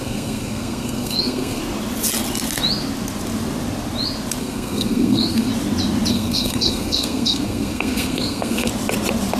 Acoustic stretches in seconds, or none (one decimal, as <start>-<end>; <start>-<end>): 1.6-4.4; 5.5-6.1; 8.7-9.4